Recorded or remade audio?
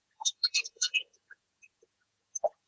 remade